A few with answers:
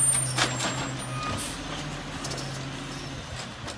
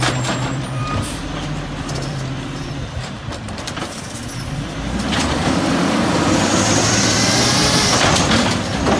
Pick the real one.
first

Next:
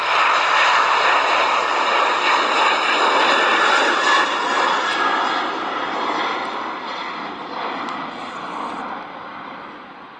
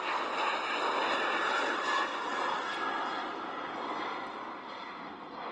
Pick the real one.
second